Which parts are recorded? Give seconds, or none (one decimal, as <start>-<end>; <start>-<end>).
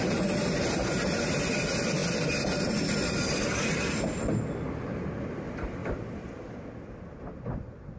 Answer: 0.0-5.8; 6.3-8.0